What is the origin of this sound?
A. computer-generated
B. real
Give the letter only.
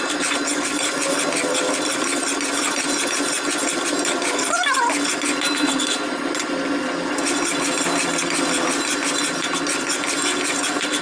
B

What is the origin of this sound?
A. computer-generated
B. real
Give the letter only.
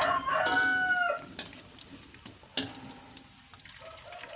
B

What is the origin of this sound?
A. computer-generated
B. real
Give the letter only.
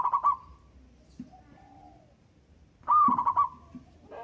B